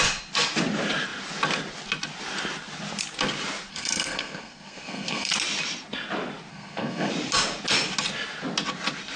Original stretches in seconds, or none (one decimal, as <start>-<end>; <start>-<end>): 0.0-3.7; 5.3-6.5; 7.1-9.2